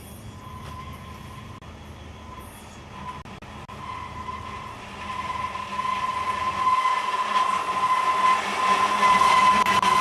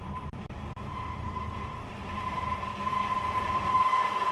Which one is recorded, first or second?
first